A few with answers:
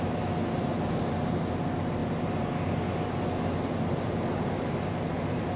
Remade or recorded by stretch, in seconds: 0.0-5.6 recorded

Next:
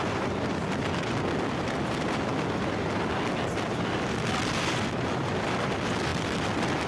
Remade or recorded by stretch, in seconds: 0.0-6.9 recorded

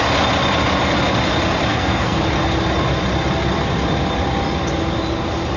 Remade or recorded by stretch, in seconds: 0.0-1.7 recorded; 1.7-2.2 remade; 2.2-5.6 recorded

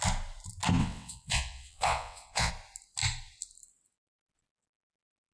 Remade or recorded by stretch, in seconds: 0.0-0.8 recorded; 0.8-2.5 remade; 2.5-5.3 recorded